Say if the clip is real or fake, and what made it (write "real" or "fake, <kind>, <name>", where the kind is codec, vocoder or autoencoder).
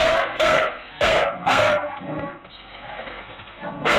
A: fake, codec, SNAC